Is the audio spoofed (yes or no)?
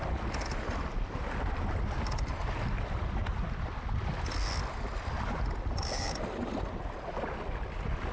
no